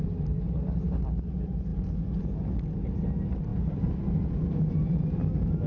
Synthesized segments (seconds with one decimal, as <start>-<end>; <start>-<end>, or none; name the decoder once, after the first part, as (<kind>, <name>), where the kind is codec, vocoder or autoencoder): none